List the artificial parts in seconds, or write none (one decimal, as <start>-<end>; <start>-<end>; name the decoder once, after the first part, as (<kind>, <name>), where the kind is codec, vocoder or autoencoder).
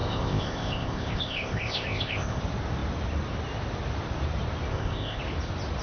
0.0-2.4 (codec, ZipCodec); 4.7-5.2